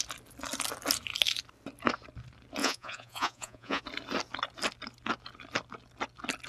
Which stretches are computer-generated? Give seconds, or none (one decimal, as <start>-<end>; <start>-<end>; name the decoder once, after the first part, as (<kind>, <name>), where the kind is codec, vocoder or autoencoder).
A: 2.6-3.8 (vocoder, Vocos)